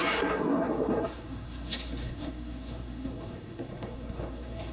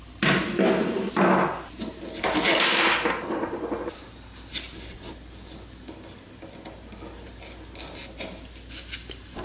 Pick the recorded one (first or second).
second